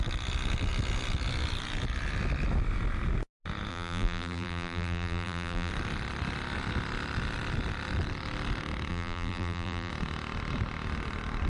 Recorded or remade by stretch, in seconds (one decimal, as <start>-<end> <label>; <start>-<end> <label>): 0.0-3.7 recorded; 3.7-5.7 remade; 5.7-8.9 recorded; 8.9-9.9 remade; 9.9-11.5 recorded